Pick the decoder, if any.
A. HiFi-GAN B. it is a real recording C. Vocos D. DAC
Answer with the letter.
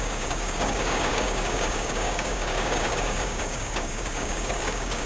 D